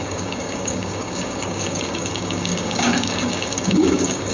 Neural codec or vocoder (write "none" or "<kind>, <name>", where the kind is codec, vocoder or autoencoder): codec, DAC